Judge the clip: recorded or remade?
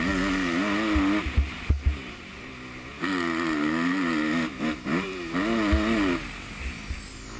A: recorded